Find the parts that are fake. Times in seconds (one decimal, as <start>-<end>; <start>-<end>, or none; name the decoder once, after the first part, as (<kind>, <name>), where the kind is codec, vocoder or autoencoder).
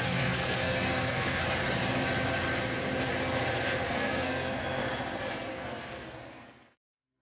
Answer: 0.0-1.4 (codec, SNAC); 3.9-4.8; 5.5-7.2